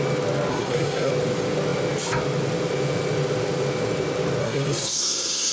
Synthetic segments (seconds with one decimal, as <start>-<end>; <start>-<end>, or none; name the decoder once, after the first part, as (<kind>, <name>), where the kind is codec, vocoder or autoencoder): 0.5-1.1 (codec, SNAC); 4.4-5.5